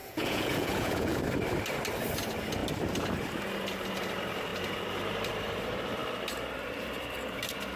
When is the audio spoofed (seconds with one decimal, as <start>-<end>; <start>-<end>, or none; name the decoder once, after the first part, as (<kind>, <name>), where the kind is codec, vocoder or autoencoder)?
0.0-1.2 (vocoder, Vocos)